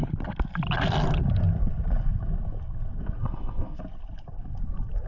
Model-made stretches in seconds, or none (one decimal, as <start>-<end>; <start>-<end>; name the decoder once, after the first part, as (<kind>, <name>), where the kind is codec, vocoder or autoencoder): 3.2-3.8 (codec, SNAC)